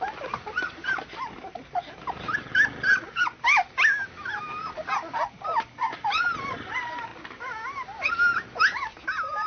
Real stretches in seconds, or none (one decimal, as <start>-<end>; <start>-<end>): 2.5-5.6; 7.1-8.6